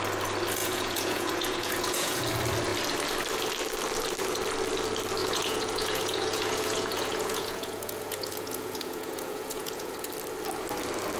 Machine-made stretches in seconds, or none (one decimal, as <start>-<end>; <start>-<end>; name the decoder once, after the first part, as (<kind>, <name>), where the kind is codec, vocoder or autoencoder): 0.6-2.2 (vocoder, Vocos); 5.2-10.1